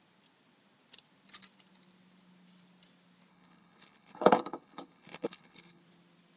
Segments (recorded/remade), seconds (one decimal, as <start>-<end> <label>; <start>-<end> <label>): 0.0-3.3 recorded; 3.3-5.8 remade; 5.8-6.4 recorded